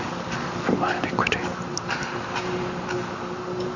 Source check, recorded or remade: recorded